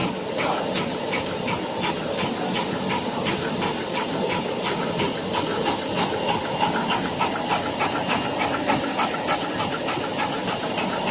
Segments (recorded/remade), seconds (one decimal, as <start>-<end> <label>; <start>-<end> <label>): 0.0-11.1 recorded